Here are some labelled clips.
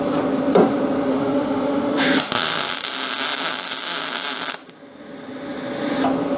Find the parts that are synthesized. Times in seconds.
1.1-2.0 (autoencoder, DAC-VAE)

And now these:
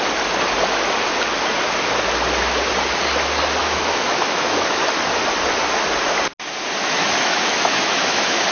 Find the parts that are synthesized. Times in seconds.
3.6-4.9 (autoencoder, DAC-VAE); 6.8-8.5

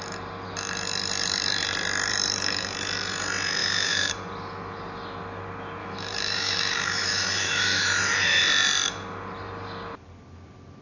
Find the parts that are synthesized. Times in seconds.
3.6-4.1 (autoencoder, DAC-VAE); 5.8-8.4

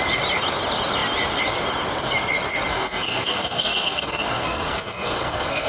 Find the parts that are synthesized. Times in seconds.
2.7-5.7 (codec, SNAC)

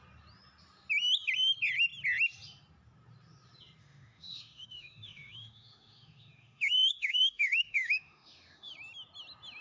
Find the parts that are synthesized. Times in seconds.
3.8-8.7 (autoencoder, DAC-VAE)

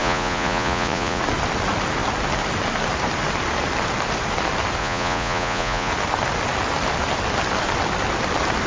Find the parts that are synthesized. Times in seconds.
0.0-1.2 (vocoder, Vocos); 4.8-5.9

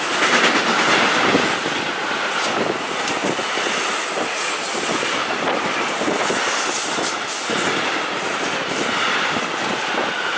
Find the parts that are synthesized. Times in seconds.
none